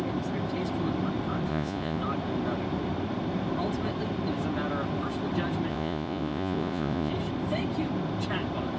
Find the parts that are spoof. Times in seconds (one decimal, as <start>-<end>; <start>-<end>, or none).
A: 1.5-2.0; 5.7-7.1